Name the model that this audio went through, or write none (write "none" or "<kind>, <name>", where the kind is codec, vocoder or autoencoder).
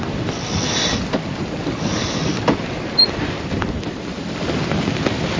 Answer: none